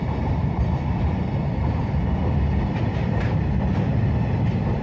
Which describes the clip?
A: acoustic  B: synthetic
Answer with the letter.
A